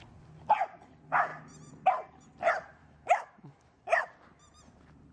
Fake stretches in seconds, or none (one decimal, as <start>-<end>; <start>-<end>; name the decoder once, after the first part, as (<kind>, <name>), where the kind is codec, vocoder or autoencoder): 2.8-3.8 (autoencoder, DAC-VAE)